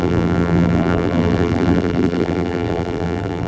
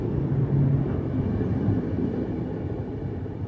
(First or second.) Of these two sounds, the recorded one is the second